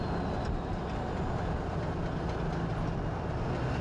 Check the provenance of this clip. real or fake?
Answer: real